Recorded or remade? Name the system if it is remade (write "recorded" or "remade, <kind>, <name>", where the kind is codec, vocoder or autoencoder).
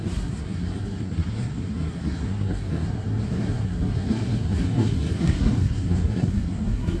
remade, codec, SNAC